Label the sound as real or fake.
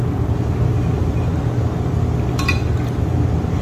real